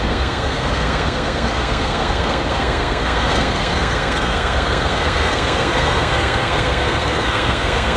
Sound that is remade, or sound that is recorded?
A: remade